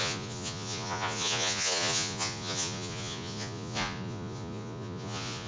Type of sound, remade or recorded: remade